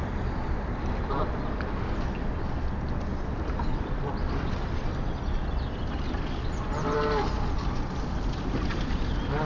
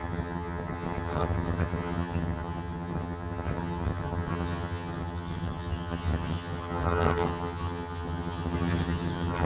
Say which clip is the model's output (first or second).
second